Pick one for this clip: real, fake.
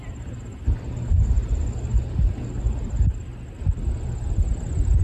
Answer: real